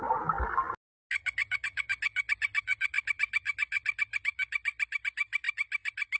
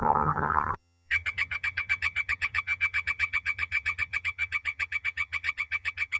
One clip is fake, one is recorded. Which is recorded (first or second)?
first